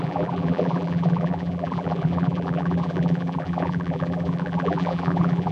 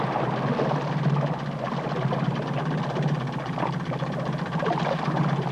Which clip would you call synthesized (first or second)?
first